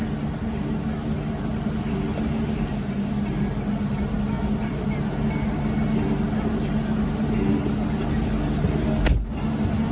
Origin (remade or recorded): recorded